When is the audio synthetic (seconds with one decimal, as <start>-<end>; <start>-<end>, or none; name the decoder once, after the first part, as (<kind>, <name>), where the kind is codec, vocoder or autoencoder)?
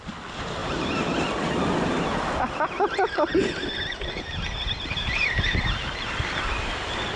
none